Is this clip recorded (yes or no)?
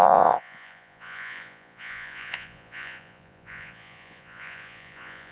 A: no